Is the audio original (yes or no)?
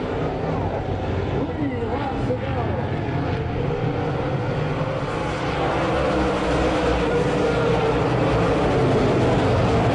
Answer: yes